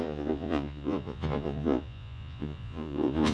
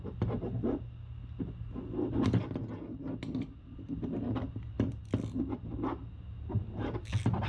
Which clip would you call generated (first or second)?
first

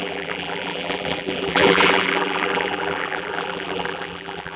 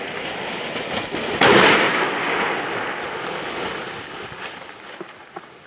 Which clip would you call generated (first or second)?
first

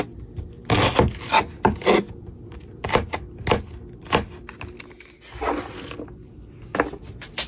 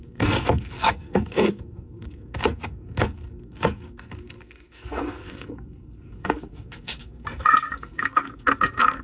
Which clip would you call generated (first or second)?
second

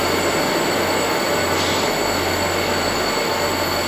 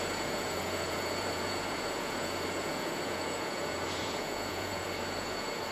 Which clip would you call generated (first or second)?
second